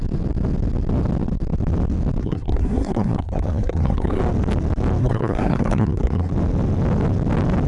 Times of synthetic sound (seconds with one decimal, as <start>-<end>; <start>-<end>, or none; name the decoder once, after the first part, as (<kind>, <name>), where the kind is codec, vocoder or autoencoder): 2.2-4.2 (codec, SNAC); 5.0-6.3